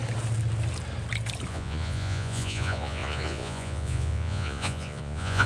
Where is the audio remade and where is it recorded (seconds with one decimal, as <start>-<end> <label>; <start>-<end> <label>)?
0.0-1.5 recorded; 1.5-5.5 remade